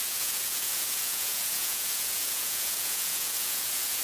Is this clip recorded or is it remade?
remade